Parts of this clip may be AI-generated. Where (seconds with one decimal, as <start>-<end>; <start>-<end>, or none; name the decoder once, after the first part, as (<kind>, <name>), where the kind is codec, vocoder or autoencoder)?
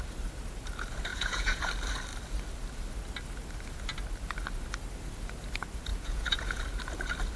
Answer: 1.1-1.7 (vocoder, Vocos); 5.9-6.6